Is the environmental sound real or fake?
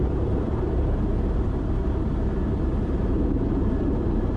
fake